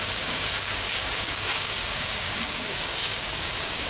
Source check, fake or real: fake